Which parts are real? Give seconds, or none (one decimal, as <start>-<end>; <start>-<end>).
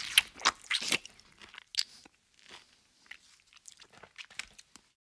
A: 0.0-5.0